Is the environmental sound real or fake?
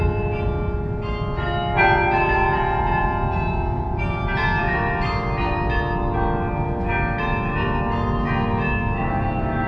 real